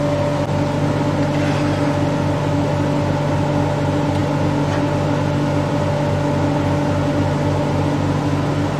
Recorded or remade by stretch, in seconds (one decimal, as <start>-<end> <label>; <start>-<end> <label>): 0.0-8.8 recorded